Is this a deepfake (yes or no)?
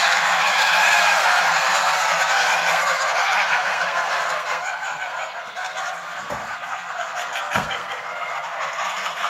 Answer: yes